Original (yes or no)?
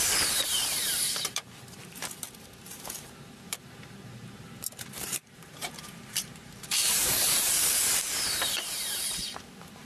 no